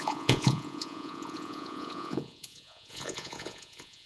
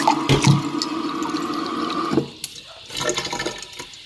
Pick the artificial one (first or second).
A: first